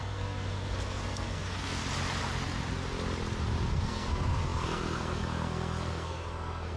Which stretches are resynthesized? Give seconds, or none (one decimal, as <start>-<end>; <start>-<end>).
0.0-1.8; 3.7-6.8